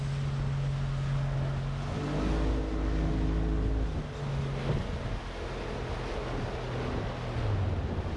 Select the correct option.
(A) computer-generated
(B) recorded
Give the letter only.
B